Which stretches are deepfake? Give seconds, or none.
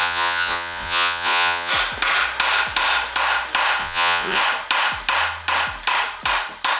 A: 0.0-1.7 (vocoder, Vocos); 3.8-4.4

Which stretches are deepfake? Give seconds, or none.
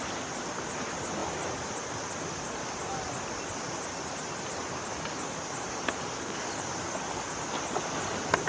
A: none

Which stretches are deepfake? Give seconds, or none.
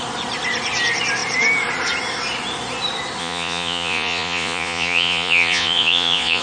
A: 3.2-6.4 (vocoder, Vocos)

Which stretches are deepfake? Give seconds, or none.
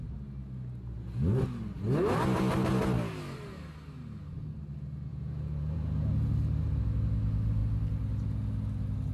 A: 5.1-6.3 (vocoder, Vocos)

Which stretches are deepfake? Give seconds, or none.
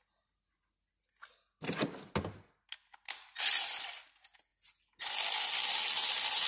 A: none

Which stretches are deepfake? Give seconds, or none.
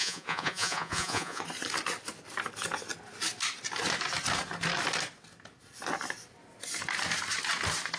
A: 0.0-1.4 (vocoder, Vocos)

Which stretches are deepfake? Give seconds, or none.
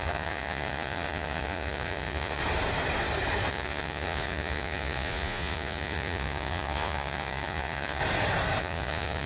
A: 0.0-2.4 (vocoder, Vocos); 3.5-8.0; 8.6-9.3